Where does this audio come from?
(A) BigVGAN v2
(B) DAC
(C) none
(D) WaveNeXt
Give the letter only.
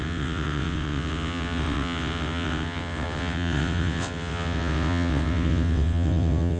D